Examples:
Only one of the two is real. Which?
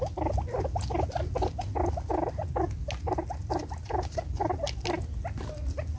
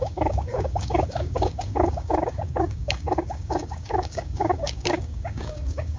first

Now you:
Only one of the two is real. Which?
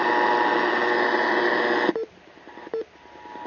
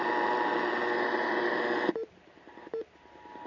first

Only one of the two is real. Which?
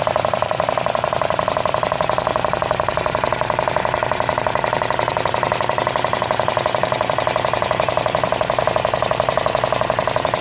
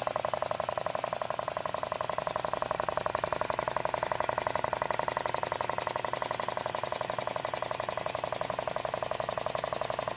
second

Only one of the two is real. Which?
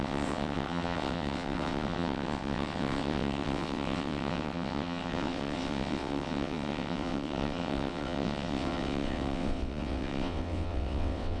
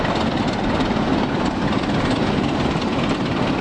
second